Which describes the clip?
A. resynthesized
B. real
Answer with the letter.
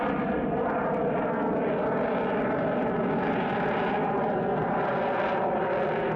B